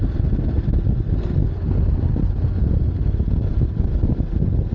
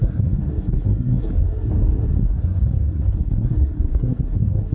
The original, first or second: first